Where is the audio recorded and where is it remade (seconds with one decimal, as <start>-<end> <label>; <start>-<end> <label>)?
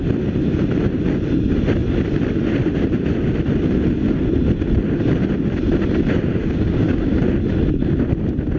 0.0-6.4 recorded; 6.4-7.2 remade; 7.2-8.6 recorded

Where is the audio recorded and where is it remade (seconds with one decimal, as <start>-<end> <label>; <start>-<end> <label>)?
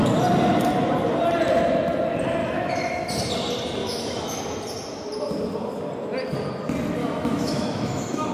0.0-2.4 recorded; 2.4-2.9 remade; 2.9-3.8 recorded; 3.8-4.4 remade; 4.4-7.0 recorded; 7.0-8.3 remade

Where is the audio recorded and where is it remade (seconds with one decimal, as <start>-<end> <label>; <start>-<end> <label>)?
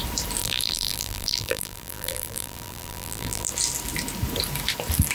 0.0-0.4 recorded; 0.4-3.5 remade; 3.5-5.1 recorded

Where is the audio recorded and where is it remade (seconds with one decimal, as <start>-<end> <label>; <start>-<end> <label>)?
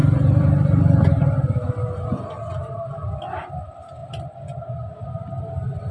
0.0-5.9 recorded